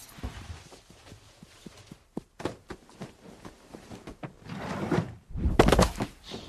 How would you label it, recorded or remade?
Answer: remade